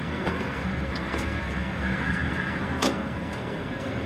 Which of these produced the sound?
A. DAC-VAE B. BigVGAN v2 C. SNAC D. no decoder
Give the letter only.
C